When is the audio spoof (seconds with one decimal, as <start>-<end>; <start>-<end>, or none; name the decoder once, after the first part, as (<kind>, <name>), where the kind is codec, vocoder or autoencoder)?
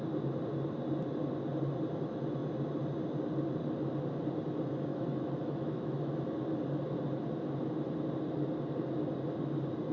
4.9-6.2 (autoencoder, DAC-VAE)